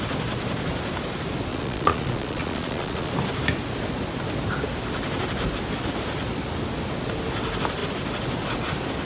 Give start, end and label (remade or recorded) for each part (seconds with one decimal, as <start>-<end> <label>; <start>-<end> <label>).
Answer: 0.0-1.5 recorded; 1.5-3.1 remade; 3.1-9.0 recorded